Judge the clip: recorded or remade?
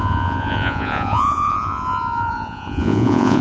remade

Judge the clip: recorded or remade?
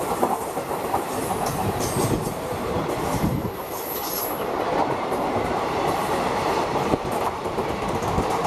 remade